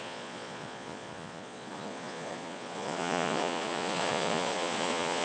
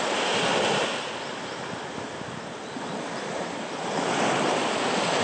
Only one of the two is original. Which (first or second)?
second